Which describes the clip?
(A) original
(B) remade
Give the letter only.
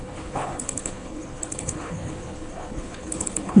B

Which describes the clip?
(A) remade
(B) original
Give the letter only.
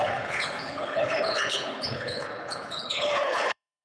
A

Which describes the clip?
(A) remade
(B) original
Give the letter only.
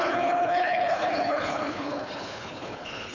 A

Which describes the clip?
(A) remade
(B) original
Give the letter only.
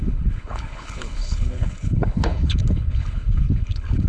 A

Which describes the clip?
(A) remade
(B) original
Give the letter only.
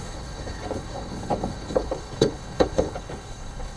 A